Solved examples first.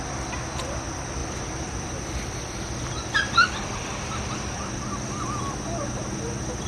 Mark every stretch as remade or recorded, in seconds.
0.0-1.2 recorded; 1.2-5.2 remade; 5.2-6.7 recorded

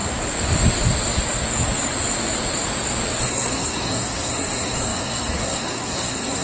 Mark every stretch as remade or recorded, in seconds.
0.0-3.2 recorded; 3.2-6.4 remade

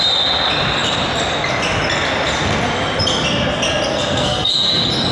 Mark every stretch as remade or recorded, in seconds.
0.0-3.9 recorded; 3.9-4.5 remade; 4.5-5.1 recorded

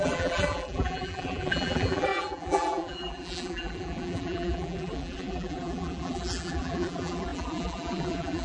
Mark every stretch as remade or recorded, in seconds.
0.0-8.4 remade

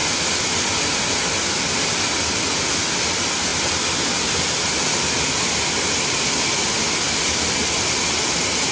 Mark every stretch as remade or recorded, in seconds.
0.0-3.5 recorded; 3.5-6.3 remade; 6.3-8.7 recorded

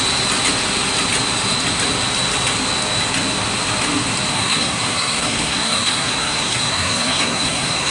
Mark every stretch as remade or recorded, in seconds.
0.0-4.3 recorded; 4.3-7.9 remade

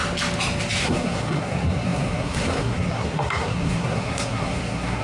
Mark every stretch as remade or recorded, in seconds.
0.0-0.8 recorded; 0.8-5.0 remade

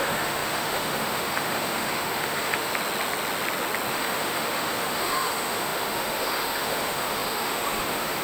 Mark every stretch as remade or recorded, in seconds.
0.0-2.7 remade; 2.7-3.9 recorded; 3.9-8.2 remade